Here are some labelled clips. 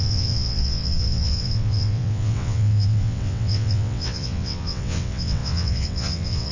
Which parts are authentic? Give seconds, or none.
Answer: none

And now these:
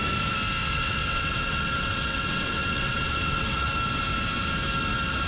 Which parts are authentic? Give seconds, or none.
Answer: 0.0-0.6; 3.7-5.3

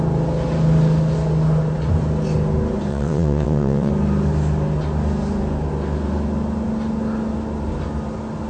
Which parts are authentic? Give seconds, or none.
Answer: 0.0-2.9; 3.9-8.5

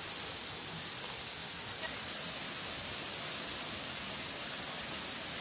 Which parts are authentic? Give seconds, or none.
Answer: 0.0-5.4

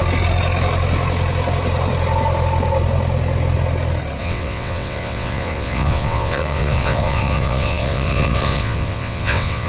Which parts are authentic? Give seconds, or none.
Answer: 0.0-4.2

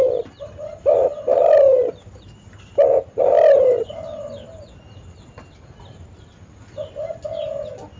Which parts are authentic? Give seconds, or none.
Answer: 0.0-8.0

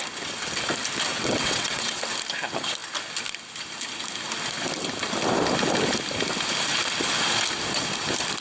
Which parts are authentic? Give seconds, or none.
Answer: 0.0-1.1; 2.0-8.4

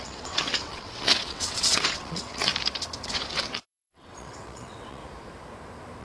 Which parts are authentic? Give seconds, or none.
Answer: 2.5-3.1; 5.0-6.0